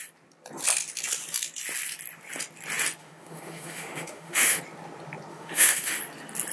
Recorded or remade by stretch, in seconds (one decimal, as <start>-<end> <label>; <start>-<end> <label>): 0.0-3.0 recorded; 3.0-4.6 remade; 4.6-5.3 recorded; 5.3-6.0 remade; 6.0-6.5 recorded